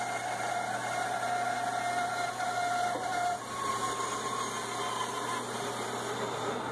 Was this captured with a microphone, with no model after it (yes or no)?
yes